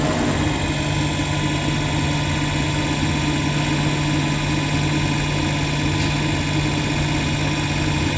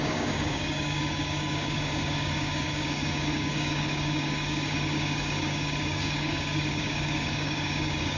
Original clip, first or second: first